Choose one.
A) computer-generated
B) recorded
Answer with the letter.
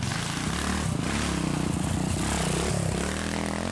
B